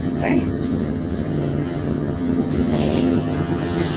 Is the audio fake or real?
fake